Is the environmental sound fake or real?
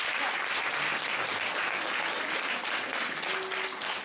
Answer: real